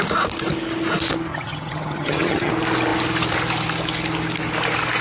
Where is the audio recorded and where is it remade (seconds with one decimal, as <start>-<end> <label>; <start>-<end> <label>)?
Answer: 0.0-1.3 recorded; 1.3-2.5 remade; 2.5-5.0 recorded